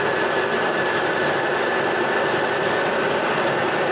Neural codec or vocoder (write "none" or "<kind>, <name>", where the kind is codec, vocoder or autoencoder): none